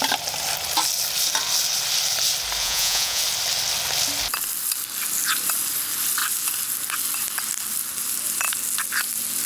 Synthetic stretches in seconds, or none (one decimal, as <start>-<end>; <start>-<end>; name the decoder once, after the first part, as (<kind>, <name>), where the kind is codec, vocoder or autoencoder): 2.6-3.2 (vocoder, Vocos)